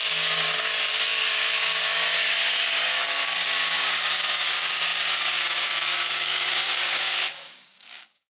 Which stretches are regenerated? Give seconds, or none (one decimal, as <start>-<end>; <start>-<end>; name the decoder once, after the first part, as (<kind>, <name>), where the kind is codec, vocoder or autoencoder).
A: 0.0-8.3 (codec, DAC)